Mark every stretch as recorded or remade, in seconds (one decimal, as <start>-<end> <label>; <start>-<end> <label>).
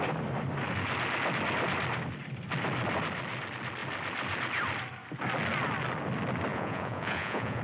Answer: 0.0-6.5 recorded; 6.5-7.6 remade